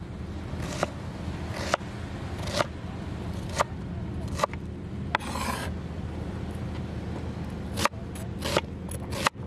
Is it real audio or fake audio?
real